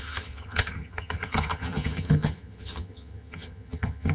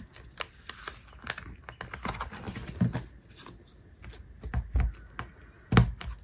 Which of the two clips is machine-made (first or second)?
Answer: first